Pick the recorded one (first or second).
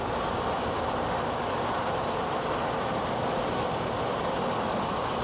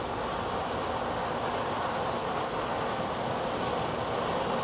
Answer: second